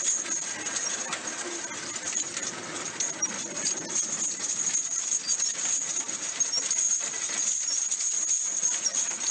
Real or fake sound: real